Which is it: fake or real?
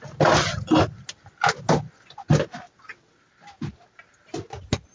real